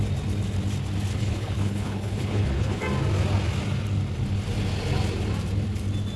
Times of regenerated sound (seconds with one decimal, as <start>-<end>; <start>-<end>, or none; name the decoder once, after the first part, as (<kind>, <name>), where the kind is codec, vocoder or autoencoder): 1.1-2.8 (codec, HILCodec)